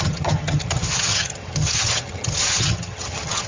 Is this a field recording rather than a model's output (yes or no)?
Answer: no